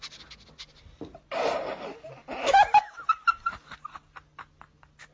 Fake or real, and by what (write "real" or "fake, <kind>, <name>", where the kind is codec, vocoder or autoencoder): real